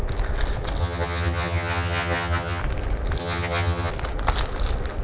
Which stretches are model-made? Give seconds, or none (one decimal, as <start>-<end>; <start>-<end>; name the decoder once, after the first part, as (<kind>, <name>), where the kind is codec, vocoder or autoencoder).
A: 0.8-2.6 (vocoder, HiFi-GAN); 3.2-3.9